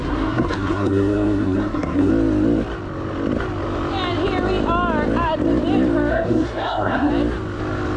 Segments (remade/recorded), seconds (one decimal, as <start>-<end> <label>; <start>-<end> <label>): 0.0-2.1 remade; 2.1-6.1 recorded; 6.1-7.1 remade; 7.1-8.0 recorded

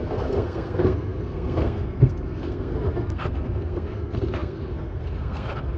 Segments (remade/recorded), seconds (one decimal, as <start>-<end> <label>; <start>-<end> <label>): 0.0-5.8 remade

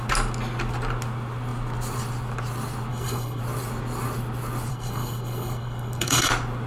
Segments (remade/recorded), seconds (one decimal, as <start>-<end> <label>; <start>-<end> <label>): 0.0-2.9 recorded; 2.9-3.4 remade; 3.4-4.7 recorded; 4.7-6.3 remade; 6.3-6.7 recorded

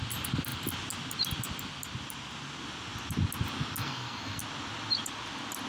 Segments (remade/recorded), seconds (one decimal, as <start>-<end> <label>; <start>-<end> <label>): 0.0-3.8 recorded; 3.8-4.4 remade; 4.4-5.7 recorded

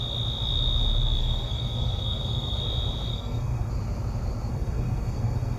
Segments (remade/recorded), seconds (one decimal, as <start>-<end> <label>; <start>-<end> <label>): 0.0-1.2 recorded; 1.2-2.6 remade; 2.6-3.1 recorded; 3.1-3.7 remade; 3.7-4.5 recorded; 4.5-5.6 remade